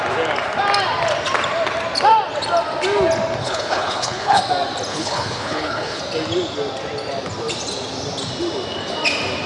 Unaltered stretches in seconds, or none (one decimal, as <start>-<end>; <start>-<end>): 0.0-3.4; 4.4-4.9; 6.0-9.5